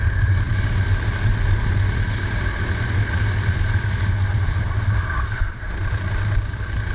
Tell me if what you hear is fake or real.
real